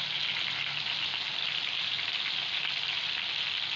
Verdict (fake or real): real